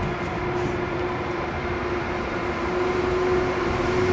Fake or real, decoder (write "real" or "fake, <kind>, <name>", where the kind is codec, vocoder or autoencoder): real